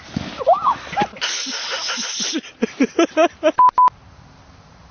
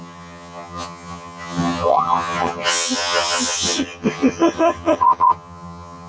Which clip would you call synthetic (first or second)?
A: second